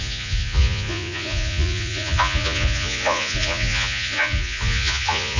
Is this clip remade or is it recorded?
remade